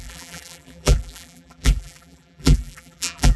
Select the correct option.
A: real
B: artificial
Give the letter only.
B